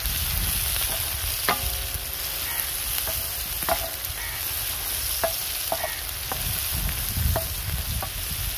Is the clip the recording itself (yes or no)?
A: yes